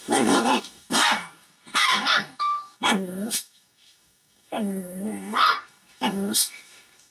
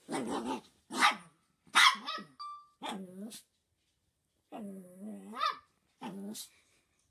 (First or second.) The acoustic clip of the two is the second